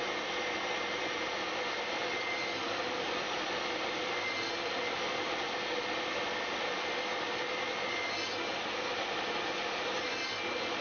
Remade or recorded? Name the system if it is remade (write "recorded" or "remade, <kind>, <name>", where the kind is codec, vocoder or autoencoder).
recorded